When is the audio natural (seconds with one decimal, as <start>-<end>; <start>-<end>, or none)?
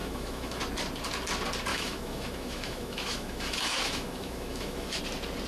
0.6-1.7; 5.0-5.5